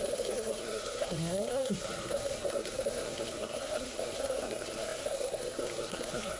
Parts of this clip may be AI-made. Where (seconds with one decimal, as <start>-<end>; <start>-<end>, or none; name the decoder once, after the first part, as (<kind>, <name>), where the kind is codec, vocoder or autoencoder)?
0.0-6.4 (codec, SNAC)